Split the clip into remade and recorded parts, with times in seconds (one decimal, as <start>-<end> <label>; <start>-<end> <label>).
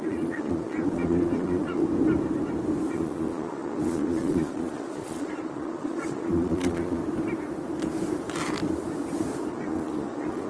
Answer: 0.0-1.8 remade; 1.8-2.9 recorded; 2.9-7.0 remade; 7.0-9.5 recorded; 9.5-10.5 remade